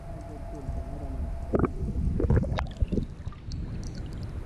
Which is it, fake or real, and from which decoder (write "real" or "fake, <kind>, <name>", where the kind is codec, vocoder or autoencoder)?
real